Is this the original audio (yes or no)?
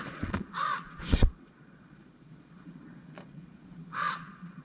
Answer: no